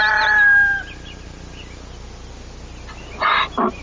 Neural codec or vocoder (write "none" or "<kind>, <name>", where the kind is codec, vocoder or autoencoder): none